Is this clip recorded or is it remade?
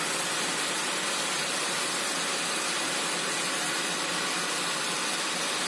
recorded